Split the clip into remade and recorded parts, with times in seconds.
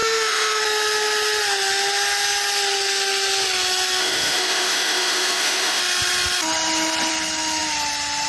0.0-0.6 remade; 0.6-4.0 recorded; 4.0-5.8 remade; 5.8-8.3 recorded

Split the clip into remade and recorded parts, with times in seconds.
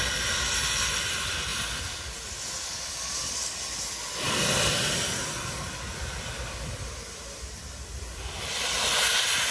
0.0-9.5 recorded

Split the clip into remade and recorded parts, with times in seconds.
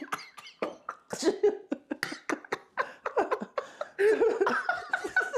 0.0-5.4 recorded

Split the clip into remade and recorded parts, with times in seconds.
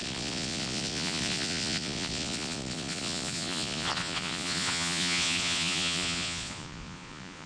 0.0-7.5 remade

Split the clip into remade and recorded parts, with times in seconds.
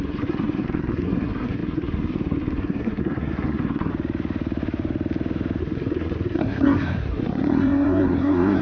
0.0-3.9 remade; 3.9-5.6 recorded; 5.6-8.6 remade